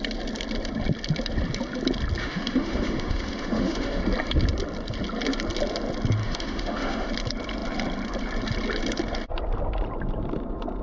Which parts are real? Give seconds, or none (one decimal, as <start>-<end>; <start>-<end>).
0.0-2.2; 4.0-6.2; 7.1-10.8